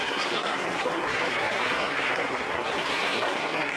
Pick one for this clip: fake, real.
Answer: fake